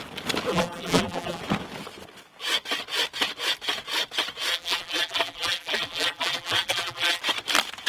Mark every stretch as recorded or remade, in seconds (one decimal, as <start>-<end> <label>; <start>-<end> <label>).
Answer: 0.0-0.5 recorded; 0.5-1.4 remade; 1.4-4.5 recorded; 4.5-7.2 remade; 7.2-7.9 recorded